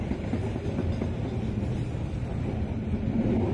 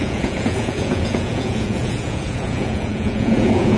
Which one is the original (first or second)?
first